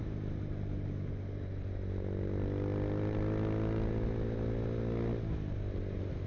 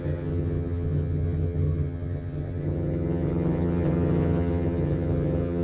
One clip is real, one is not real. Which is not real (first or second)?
second